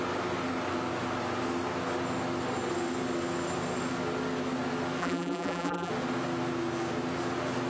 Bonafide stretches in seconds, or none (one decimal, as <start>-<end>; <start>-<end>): 0.0-5.0; 5.9-7.7